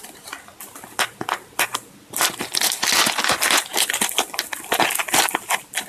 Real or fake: real